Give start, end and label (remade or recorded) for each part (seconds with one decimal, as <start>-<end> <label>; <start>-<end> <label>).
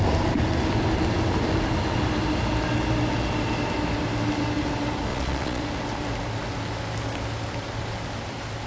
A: 0.0-5.1 recorded; 5.1-5.6 remade; 5.6-8.7 recorded